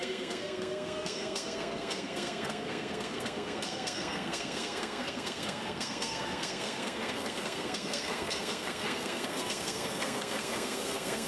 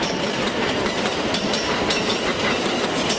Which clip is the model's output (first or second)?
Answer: first